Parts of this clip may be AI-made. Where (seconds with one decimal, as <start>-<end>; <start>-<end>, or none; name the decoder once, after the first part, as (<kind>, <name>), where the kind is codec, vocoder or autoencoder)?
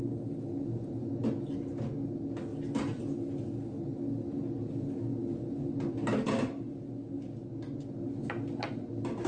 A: none